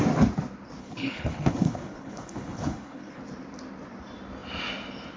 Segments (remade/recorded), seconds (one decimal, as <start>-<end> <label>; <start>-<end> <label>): 0.0-0.8 recorded; 0.8-3.2 remade; 3.2-5.2 recorded